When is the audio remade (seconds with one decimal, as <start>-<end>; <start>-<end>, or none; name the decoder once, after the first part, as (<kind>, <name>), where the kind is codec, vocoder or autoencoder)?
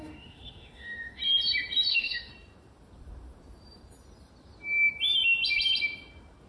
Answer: 0.0-1.2 (autoencoder, DAC-VAE); 1.9-2.3